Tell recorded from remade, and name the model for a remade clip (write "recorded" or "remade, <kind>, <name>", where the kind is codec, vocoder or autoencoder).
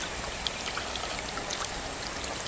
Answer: recorded